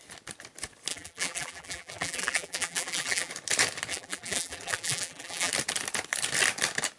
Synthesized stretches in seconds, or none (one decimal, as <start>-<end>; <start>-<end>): 0.9-3.3; 3.9-5.5